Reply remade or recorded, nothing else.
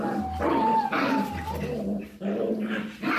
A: recorded